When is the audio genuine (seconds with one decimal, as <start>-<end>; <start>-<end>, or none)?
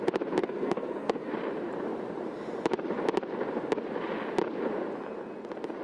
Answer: 0.0-0.4; 1.3-5.8